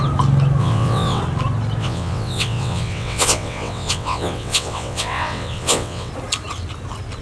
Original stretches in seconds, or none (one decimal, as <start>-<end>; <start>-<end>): 0.0-0.6; 1.2-1.8; 6.1-7.2